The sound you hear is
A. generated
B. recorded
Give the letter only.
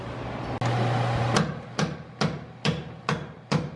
B